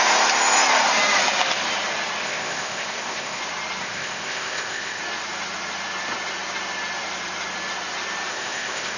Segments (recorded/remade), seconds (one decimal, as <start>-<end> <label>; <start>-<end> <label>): 0.0-2.2 recorded; 2.2-3.4 remade; 3.4-3.8 recorded; 3.8-5.0 remade; 5.0-8.3 recorded; 8.3-9.0 remade